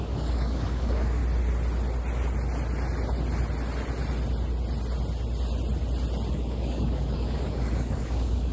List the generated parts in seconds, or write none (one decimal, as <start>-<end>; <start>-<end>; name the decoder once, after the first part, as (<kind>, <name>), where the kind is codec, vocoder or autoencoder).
0.0-1.2 (codec, DAC); 6.3-8.5